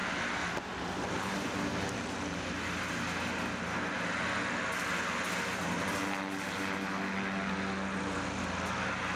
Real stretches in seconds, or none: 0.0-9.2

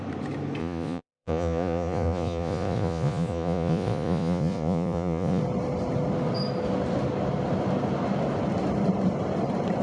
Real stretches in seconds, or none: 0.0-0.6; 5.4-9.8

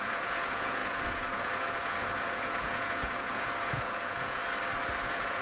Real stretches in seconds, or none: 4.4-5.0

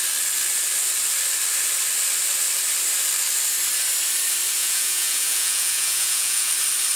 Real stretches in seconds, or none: 0.0-4.6; 6.5-7.0

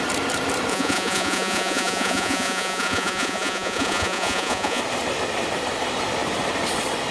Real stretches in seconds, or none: 0.0-0.7; 4.8-7.1